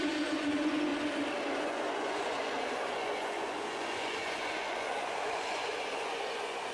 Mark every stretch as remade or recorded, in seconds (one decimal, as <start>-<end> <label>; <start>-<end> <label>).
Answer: 0.0-0.9 remade; 0.9-1.5 recorded; 1.5-6.7 remade